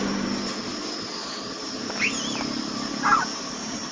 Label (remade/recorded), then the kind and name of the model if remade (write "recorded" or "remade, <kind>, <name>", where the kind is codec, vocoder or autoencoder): recorded